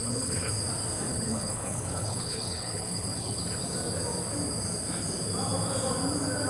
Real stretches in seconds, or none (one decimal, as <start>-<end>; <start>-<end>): 0.5-1.1; 3.4-6.5